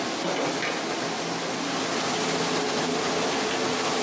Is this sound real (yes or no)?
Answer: yes